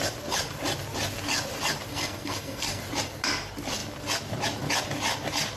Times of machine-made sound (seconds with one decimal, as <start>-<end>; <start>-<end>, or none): 1.9-2.8

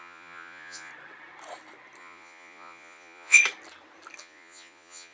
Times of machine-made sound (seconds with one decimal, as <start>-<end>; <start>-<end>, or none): 0.0-0.9; 2.0-3.4; 4.2-5.1

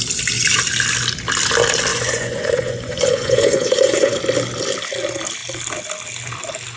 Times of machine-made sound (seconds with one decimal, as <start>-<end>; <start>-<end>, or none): 1.9-4.2

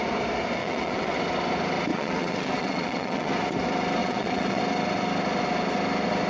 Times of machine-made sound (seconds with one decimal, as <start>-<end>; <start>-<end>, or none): 0.6-1.2; 1.9-3.3; 4.0-4.6

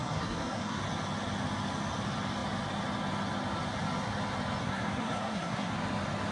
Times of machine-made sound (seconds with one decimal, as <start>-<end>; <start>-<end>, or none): 0.0-0.8; 4.6-5.7